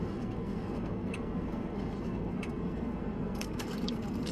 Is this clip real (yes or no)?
no